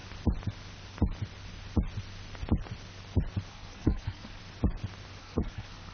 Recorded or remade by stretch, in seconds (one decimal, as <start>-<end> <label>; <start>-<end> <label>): 0.0-3.5 recorded; 3.5-4.4 remade; 4.4-5.2 recorded; 5.2-5.9 remade